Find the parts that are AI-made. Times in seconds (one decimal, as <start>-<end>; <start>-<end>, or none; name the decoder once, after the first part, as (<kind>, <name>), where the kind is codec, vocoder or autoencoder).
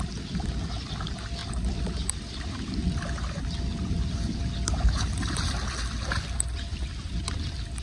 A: 1.4-3.2 (vocoder, BigVGAN v2)